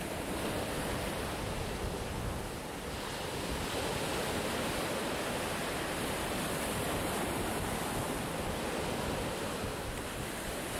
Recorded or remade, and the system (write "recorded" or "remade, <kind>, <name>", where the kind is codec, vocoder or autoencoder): remade, vocoder, BigVGAN v2